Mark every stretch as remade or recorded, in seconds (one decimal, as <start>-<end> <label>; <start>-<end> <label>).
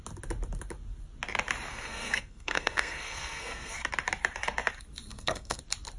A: 0.0-1.7 recorded; 1.7-3.8 remade; 3.8-5.1 recorded; 5.1-5.6 remade; 5.6-6.0 recorded